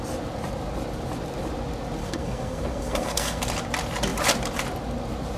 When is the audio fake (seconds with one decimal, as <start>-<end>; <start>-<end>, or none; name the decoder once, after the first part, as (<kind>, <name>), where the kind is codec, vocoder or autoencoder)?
2.0-3.4 (codec, SNAC)